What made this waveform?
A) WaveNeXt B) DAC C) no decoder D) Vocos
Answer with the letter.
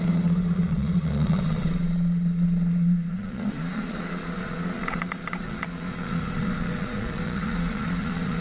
D